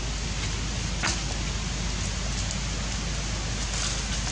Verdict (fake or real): real